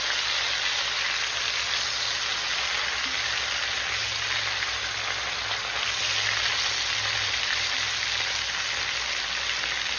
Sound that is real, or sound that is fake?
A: real